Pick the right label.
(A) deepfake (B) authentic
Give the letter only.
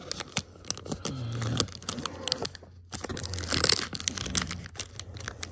B